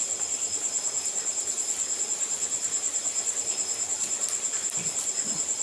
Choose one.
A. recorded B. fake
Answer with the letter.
A